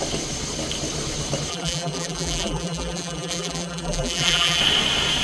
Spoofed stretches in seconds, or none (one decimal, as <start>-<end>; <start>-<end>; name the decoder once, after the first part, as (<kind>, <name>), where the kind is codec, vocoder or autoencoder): 1.5-4.6 (vocoder, BigVGAN v2)